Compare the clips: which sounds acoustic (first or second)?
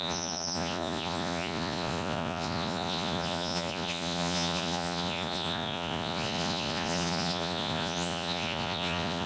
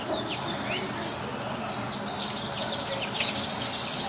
second